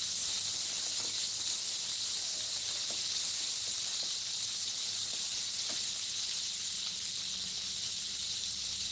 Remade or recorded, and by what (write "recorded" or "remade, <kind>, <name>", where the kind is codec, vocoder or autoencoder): recorded